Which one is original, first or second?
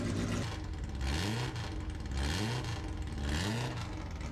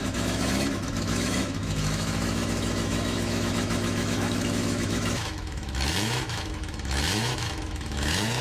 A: first